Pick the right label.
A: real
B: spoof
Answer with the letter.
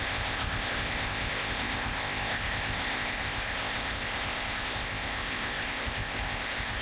B